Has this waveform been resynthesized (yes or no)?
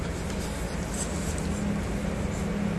no